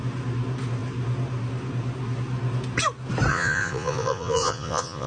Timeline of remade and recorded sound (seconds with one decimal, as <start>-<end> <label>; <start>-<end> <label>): 0.0-3.3 recorded; 3.3-5.1 remade